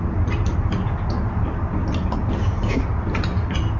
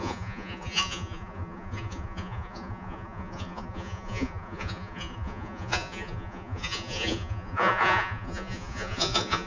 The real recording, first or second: first